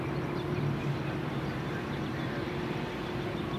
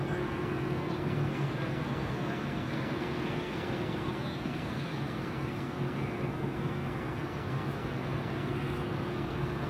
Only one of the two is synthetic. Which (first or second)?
second